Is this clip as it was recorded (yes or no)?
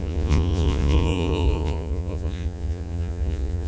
no